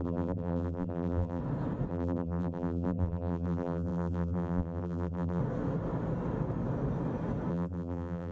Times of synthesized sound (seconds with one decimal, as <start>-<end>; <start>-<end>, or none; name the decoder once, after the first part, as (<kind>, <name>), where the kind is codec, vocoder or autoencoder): 0.0-1.4 (vocoder, BigVGAN v2); 1.9-5.4; 7.5-8.3